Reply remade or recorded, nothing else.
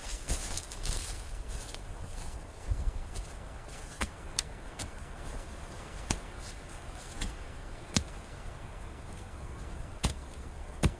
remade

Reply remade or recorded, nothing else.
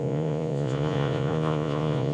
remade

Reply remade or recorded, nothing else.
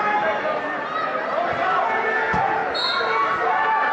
recorded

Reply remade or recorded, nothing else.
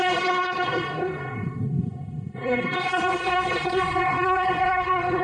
remade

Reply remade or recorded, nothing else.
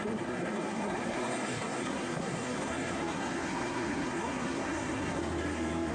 remade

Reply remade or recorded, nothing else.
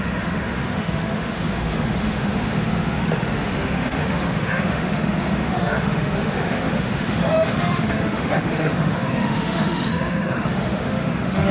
remade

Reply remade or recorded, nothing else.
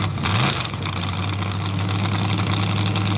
recorded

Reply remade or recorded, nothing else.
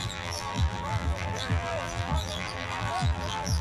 remade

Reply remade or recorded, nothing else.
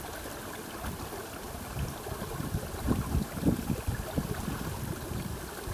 recorded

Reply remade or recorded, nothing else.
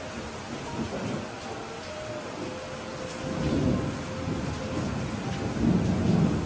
recorded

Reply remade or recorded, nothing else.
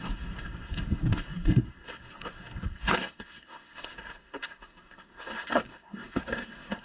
remade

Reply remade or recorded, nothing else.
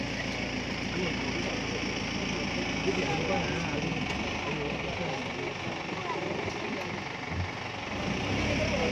recorded